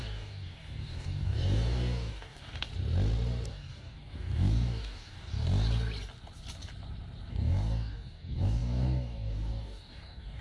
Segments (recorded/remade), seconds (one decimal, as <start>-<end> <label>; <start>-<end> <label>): 0.0-2.7 remade; 2.7-3.5 recorded; 3.5-5.3 remade; 5.3-7.3 recorded; 7.3-10.4 remade

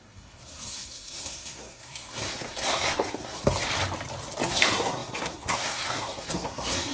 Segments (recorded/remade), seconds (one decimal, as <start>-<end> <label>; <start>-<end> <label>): 0.0-3.4 remade; 3.4-4.5 recorded; 4.5-6.9 remade

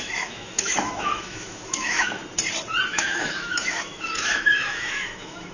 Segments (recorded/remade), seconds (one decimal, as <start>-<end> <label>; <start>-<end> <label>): 0.0-2.2 remade; 2.2-2.9 recorded; 2.9-5.5 remade

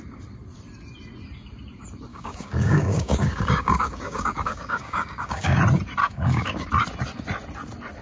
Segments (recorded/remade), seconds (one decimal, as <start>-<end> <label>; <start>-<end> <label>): 0.0-2.1 recorded; 2.1-5.6 remade; 5.6-6.0 recorded; 6.0-6.7 remade; 6.7-8.0 recorded

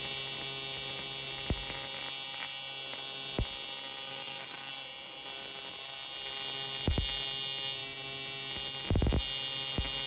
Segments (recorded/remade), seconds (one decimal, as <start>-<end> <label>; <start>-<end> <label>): 0.0-4.1 recorded; 4.1-4.7 remade; 4.7-10.1 recorded

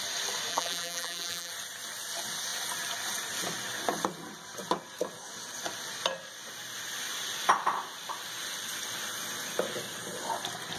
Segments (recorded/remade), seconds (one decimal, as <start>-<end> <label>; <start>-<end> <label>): 0.0-0.5 recorded; 0.5-1.5 remade; 1.5-10.8 recorded